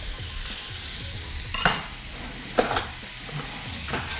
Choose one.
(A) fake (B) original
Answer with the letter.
B